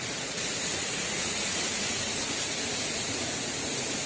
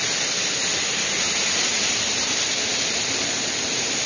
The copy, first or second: first